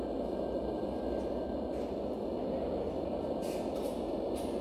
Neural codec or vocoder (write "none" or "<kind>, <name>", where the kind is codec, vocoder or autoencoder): none